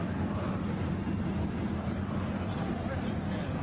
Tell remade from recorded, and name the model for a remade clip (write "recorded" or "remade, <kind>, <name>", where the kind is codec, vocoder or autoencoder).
recorded